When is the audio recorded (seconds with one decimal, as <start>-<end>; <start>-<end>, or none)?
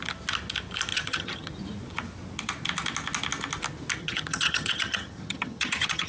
0.0-0.9; 1.5-4.0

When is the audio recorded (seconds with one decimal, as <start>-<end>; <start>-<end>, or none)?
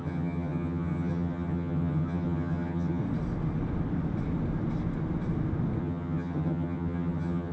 3.0-5.8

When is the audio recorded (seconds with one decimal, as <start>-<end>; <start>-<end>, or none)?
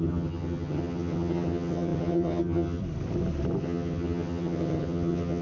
2.8-3.6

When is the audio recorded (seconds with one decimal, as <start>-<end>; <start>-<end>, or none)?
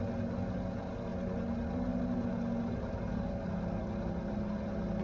0.0-5.0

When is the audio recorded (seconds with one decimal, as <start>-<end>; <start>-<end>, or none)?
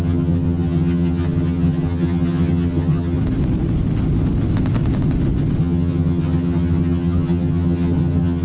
3.2-5.6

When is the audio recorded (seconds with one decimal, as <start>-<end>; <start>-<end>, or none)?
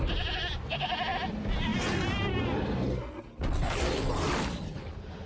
0.0-5.3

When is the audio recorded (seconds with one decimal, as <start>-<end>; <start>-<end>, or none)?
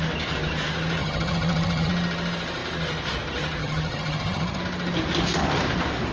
0.0-1.0; 1.9-3.6; 4.6-6.1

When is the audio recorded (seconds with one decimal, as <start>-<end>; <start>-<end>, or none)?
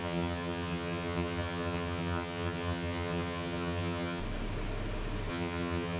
4.2-5.3